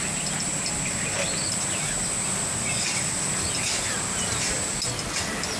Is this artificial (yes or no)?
no